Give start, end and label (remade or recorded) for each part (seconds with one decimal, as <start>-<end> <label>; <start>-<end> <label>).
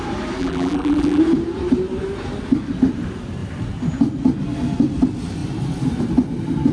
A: 0.0-0.4 recorded; 0.4-1.2 remade; 1.2-6.7 recorded